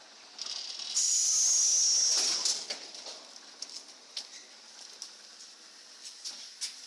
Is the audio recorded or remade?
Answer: recorded